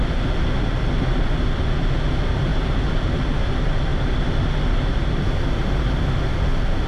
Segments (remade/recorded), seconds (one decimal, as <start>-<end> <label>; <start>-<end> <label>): 0.0-6.9 recorded

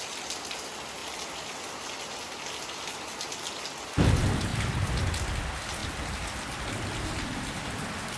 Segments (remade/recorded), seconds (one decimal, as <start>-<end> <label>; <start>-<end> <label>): 0.0-4.5 recorded; 4.5-5.0 remade; 5.0-5.8 recorded; 5.8-8.2 remade

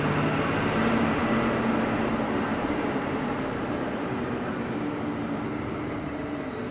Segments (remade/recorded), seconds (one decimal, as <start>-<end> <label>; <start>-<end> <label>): 0.0-2.5 recorded; 2.5-6.7 remade

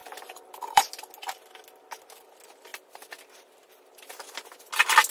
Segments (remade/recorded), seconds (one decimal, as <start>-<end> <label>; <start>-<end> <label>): 0.0-0.8 remade; 0.8-5.1 recorded

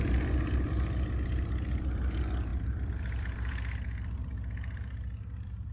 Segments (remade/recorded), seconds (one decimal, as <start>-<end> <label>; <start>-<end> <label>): 0.0-2.5 recorded; 2.5-5.7 remade

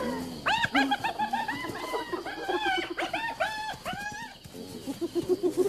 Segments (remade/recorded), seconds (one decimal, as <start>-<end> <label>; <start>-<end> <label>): 0.0-5.7 recorded

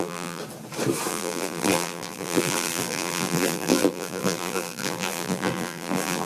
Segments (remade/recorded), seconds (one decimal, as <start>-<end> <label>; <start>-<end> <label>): 0.0-0.4 remade; 0.4-1.1 recorded; 1.1-6.3 remade

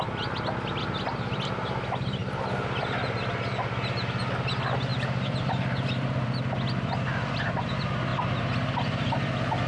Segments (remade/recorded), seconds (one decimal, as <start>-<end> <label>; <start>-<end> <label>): 0.0-4.9 recorded; 4.9-6.4 remade; 6.4-7.1 recorded; 7.1-7.7 remade; 7.7-8.1 recorded; 8.1-9.1 remade; 9.1-9.7 recorded